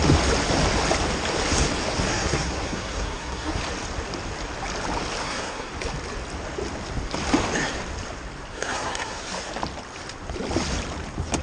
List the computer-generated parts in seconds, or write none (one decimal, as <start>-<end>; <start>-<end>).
2.1-3.6; 5.2-5.7; 8.5-9.2

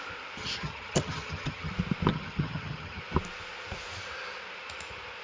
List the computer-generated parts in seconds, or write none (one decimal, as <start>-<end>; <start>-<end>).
0.4-1.7; 2.1-3.0

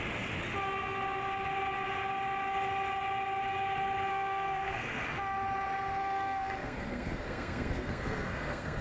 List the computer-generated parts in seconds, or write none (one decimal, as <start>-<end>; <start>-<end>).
4.1-5.0; 6.0-8.8

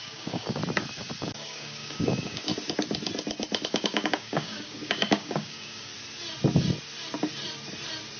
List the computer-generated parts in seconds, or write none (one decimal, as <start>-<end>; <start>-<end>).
0.0-0.6; 1.2-2.5; 3.7-5.9

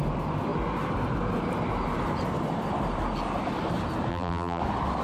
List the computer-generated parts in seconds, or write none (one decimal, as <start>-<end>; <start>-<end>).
4.1-4.6